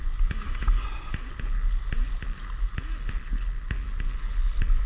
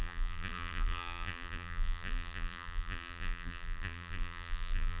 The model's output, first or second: second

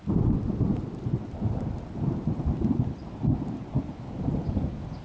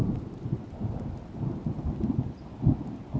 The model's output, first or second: first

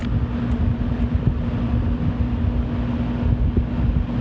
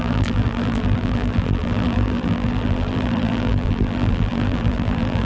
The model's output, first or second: second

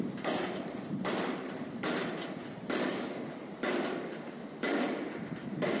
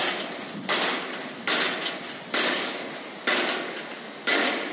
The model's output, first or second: first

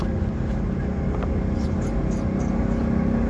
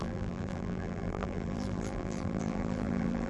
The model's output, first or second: second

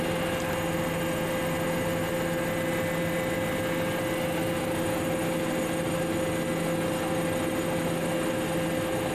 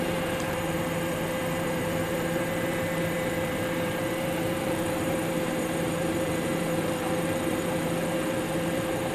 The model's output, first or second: second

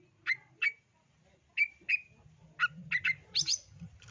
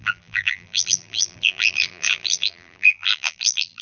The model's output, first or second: second